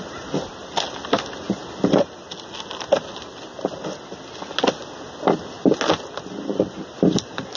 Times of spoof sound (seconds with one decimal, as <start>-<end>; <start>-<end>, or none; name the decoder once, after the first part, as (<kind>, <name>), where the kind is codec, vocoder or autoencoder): none